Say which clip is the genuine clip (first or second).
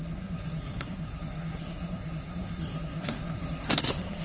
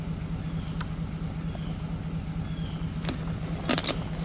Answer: second